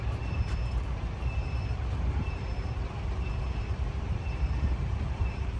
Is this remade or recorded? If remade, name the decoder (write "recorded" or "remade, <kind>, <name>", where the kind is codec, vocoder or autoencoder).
remade, vocoder, BigVGAN v2